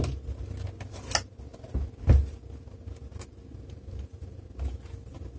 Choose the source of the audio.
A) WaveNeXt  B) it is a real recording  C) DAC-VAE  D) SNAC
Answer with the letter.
B